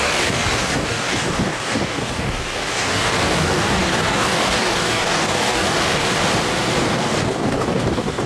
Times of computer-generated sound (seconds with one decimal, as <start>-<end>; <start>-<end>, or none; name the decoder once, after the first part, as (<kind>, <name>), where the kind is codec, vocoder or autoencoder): 0.0-6.2 (codec, DAC); 6.8-8.3